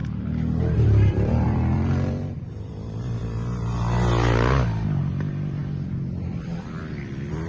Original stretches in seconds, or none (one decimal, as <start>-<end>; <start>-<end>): 0.0-0.6; 3.2-5.0